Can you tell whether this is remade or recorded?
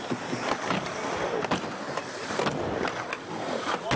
recorded